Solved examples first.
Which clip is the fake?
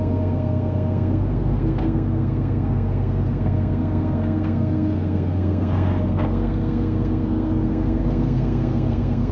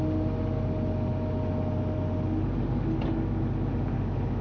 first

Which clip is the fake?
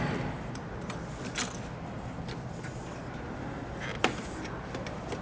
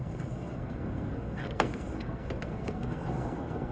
second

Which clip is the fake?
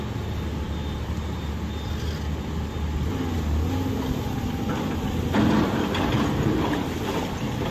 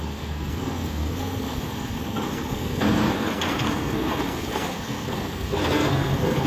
second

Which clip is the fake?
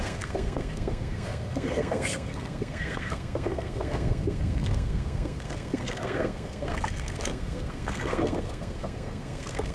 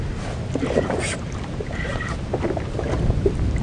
first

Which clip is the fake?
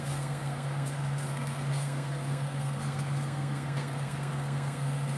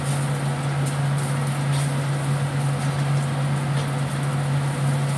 first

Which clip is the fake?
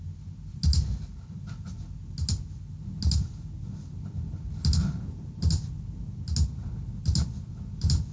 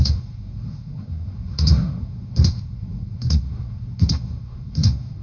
second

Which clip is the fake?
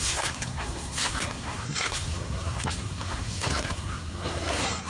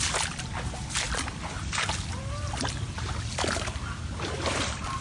first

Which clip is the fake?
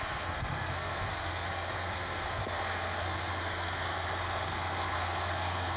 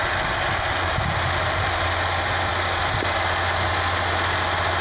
first